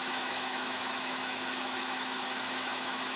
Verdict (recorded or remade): remade